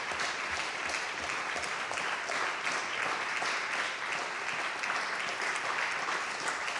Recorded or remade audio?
recorded